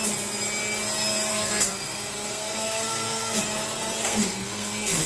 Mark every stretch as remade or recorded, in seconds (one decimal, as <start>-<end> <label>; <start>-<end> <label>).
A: 0.0-1.3 recorded; 1.3-3.4 remade; 3.4-4.0 recorded; 4.0-5.1 remade